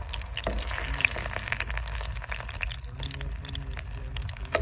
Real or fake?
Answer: real